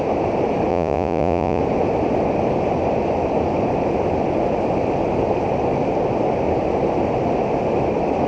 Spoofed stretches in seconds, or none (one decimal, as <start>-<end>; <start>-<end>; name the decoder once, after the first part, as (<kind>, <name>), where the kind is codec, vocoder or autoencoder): 0.7-1.6 (vocoder, Vocos)